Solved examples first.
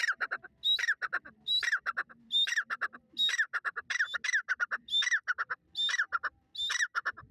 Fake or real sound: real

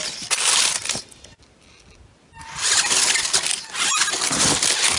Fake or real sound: real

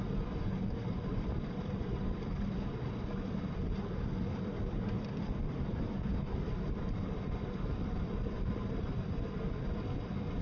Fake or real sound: real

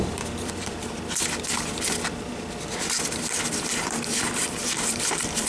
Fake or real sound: fake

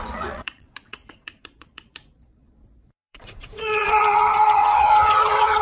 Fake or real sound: fake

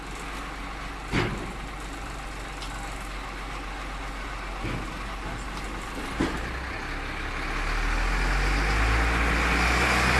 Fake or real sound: real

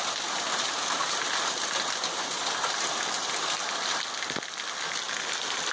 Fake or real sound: real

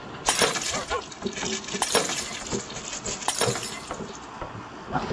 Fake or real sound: real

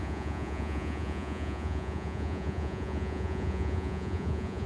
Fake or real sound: fake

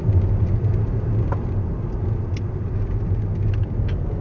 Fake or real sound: real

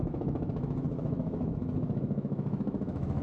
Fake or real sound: fake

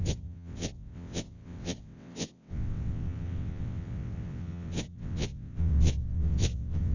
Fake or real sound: fake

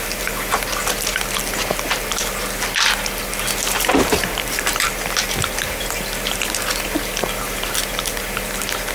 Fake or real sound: real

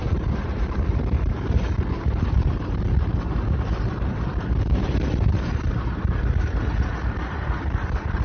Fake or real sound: fake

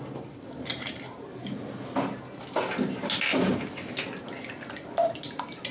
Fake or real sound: real